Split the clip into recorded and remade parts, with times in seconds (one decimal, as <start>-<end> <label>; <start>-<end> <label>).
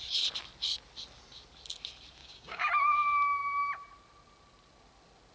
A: 0.0-2.2 recorded; 2.2-2.7 remade; 2.7-5.3 recorded